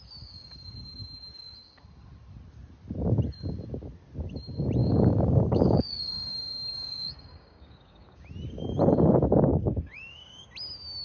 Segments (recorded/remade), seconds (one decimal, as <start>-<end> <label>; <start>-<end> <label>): 0.0-4.8 recorded; 4.8-8.2 remade; 8.2-9.5 recorded; 9.5-10.5 remade; 10.5-11.0 recorded